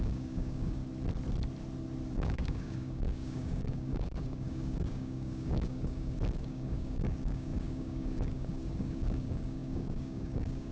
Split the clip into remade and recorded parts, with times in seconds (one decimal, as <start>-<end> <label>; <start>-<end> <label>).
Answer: 0.0-0.8 remade; 0.8-2.1 recorded; 2.1-10.7 remade